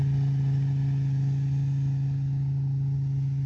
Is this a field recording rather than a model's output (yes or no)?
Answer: yes